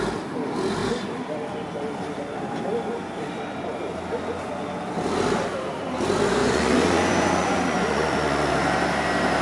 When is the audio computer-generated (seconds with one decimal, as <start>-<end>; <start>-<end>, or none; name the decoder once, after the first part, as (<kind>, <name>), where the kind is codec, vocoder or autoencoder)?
6.4-8.5 (vocoder, Vocos)